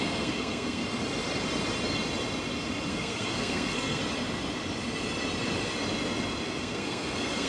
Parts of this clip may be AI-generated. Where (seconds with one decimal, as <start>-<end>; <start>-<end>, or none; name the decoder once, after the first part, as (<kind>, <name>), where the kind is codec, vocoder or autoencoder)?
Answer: 0.0-0.8 (codec, SNAC); 2.9-4.0; 6.6-7.5